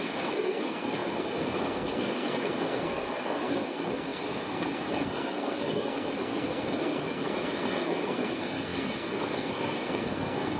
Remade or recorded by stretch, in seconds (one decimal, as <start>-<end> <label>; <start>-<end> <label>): 0.0-10.6 remade